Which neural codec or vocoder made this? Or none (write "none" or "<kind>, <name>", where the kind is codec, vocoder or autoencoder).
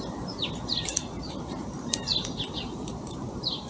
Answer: vocoder, BigVGAN v2